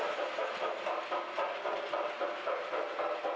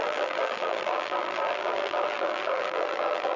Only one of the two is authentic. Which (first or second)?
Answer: first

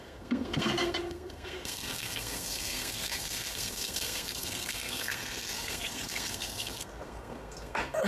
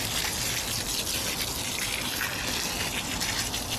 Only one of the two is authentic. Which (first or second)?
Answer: second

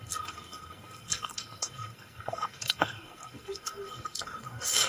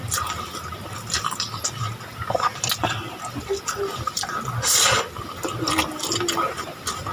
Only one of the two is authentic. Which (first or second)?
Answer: second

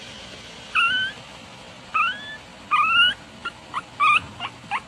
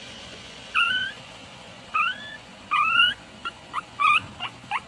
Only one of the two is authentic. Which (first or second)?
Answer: first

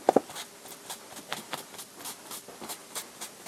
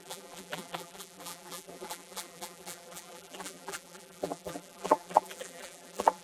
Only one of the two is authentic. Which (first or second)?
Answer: first